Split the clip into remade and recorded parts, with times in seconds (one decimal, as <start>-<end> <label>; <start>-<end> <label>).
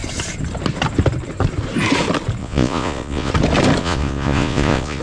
0.0-2.4 recorded; 2.4-3.3 remade; 3.3-3.8 recorded; 3.8-5.0 remade